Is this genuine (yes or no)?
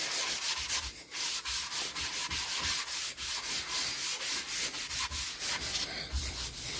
yes